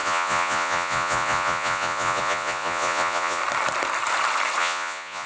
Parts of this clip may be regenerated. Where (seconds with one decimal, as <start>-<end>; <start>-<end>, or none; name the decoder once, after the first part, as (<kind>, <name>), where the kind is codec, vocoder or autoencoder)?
0.0-3.4 (vocoder, Vocos); 4.6-5.3